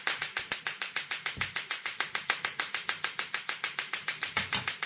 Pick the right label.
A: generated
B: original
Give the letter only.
A